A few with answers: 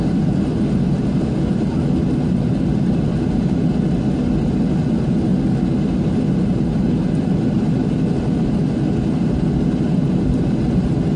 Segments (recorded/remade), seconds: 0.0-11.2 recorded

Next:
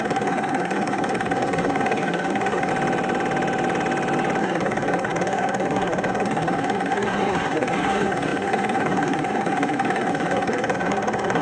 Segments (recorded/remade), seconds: 0.0-2.7 remade; 2.7-4.4 recorded; 4.4-11.4 remade